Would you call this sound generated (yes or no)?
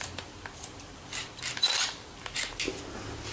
yes